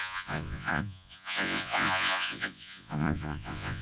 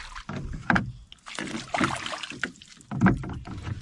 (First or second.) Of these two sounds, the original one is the second